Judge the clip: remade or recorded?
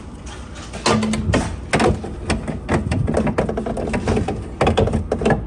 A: recorded